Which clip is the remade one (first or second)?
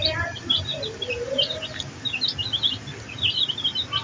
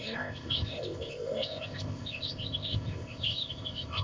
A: second